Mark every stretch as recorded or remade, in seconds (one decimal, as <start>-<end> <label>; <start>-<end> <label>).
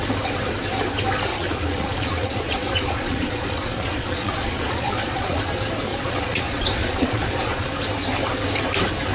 0.0-1.3 recorded; 1.3-5.4 remade; 5.4-5.9 recorded; 5.9-7.7 remade; 7.7-9.1 recorded